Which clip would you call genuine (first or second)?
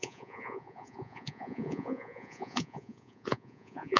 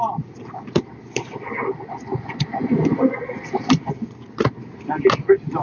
second